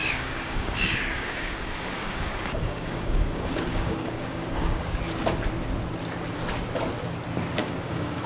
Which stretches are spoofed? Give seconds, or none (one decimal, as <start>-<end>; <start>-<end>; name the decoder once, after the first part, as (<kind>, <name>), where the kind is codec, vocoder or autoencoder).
0.0-5.0 (codec, DAC); 7.6-8.3